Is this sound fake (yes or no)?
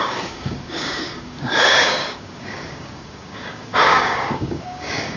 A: yes